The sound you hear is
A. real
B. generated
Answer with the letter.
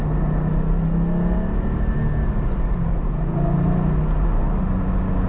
A